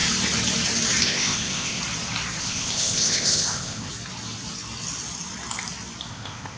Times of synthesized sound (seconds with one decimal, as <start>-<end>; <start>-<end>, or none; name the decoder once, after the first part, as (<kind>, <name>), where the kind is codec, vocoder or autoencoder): 1.0-1.8 (codec, ZipCodec); 2.4-3.9; 6.1-6.6